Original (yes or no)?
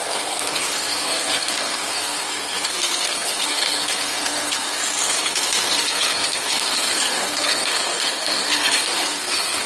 no